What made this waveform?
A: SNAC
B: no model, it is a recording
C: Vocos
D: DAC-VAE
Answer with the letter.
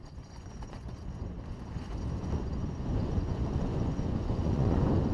C